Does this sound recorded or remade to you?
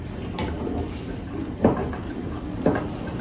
recorded